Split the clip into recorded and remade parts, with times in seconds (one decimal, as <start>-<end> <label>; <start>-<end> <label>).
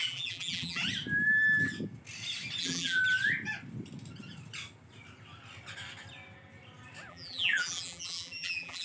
0.0-0.8 remade; 0.8-2.6 recorded; 2.6-3.0 remade; 3.0-7.1 recorded; 7.1-8.8 remade